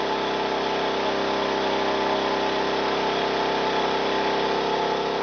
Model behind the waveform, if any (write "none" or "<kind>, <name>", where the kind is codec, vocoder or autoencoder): none